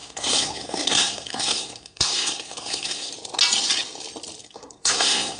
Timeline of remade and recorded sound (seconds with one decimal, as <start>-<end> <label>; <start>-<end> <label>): 0.0-3.1 remade; 3.1-4.4 recorded; 4.4-5.4 remade